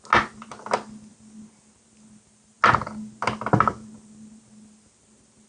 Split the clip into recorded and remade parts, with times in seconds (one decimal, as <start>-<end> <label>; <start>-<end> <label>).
0.0-5.5 recorded